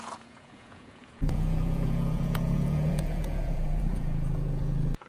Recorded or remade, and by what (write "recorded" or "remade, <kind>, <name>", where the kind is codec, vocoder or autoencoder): remade, vocoder, Vocos